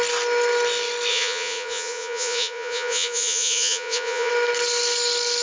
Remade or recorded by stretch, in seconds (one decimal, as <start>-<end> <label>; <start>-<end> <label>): 0.0-1.1 recorded; 1.1-4.3 remade; 4.3-5.4 recorded